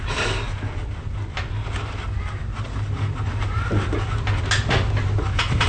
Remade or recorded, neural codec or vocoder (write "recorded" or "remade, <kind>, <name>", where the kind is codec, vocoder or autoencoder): recorded